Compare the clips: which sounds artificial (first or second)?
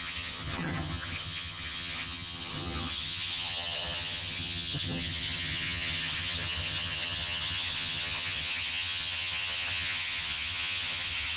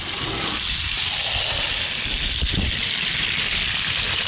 first